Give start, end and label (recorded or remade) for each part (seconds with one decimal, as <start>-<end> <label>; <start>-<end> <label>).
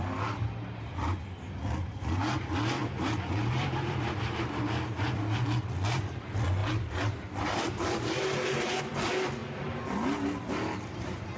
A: 0.0-2.8 recorded; 2.8-4.6 remade; 4.6-6.6 recorded; 6.6-8.8 remade; 8.8-11.4 recorded